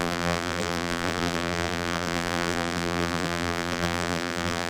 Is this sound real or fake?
fake